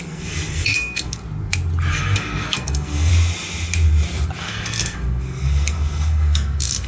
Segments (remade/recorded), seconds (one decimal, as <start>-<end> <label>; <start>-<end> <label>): 0.0-1.2 remade; 1.2-1.9 recorded; 1.9-3.1 remade; 3.1-4.4 recorded; 4.4-6.9 remade